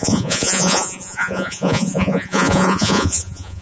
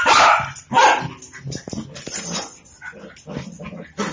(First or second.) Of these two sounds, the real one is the second